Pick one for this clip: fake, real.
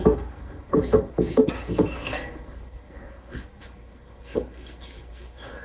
fake